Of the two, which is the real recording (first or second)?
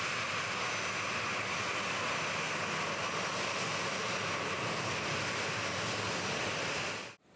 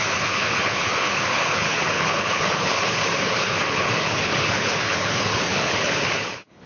first